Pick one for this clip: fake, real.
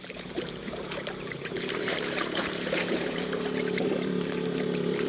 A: fake